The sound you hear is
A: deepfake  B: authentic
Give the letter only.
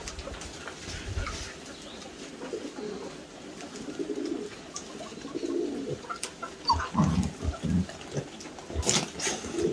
B